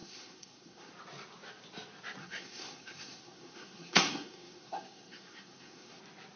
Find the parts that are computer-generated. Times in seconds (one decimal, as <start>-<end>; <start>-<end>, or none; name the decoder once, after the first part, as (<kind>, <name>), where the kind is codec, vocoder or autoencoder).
0.0-0.9 (codec, SNAC); 2.2-6.0